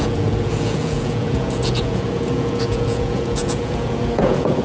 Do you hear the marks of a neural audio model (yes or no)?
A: yes